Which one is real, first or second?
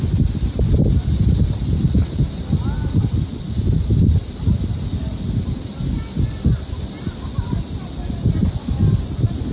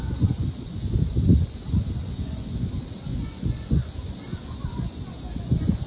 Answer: first